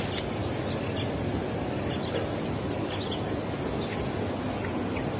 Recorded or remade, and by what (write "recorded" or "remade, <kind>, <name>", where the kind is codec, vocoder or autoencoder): recorded